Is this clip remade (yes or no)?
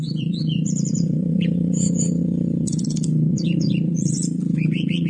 yes